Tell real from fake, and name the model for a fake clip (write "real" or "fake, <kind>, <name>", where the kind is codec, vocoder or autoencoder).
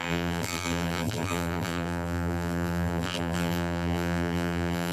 fake, vocoder, BigVGAN v2